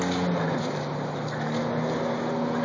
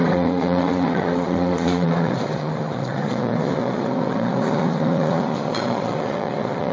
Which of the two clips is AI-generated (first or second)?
second